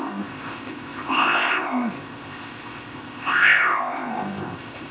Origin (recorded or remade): remade